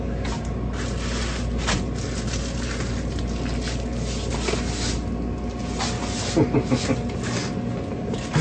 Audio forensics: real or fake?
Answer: real